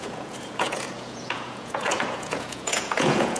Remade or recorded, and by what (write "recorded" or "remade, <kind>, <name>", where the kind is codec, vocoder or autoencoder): remade, vocoder, Vocos